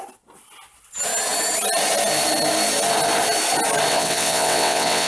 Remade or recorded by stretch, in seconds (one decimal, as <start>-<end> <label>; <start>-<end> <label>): 0.0-3.9 recorded; 3.9-5.1 remade